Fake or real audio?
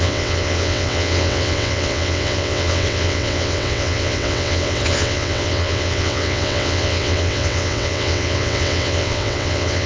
fake